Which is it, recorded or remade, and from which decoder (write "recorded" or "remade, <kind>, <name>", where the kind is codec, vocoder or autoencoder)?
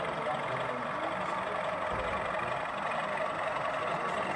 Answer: recorded